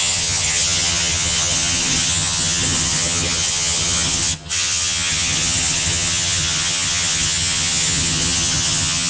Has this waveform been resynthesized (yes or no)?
yes